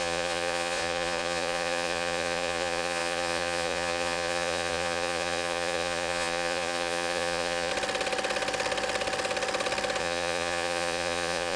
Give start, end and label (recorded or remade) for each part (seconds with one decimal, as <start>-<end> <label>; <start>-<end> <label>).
0.0-7.7 remade; 7.7-10.0 recorded; 10.0-11.6 remade